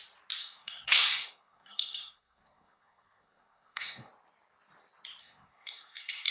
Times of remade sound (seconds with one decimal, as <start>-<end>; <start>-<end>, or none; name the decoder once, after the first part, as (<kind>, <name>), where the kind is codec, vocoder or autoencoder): 0.4-4.1 (codec, SNAC); 5.2-6.3

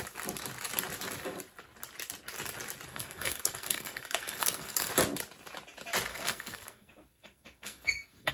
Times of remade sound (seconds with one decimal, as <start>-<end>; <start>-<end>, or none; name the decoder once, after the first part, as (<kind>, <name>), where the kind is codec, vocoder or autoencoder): 2.9-4.9 (codec, SNAC); 6.1-8.3